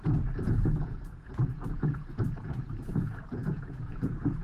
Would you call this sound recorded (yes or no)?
no